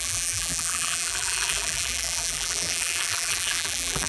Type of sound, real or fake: fake